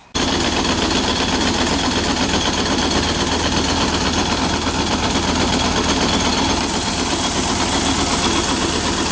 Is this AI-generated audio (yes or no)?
no